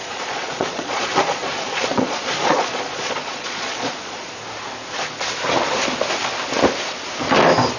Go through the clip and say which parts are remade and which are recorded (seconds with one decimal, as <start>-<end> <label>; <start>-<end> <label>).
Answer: 0.0-4.3 remade; 4.3-7.8 recorded